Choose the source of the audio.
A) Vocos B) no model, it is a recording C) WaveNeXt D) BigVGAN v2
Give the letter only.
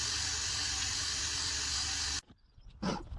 B